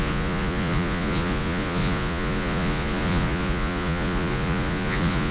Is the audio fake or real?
fake